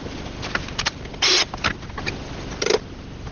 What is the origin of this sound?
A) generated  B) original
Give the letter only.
B